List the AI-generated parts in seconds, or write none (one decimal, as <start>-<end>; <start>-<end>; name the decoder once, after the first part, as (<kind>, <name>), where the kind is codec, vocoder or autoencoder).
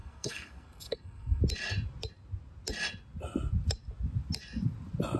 0.0-1.4 (codec, SNAC)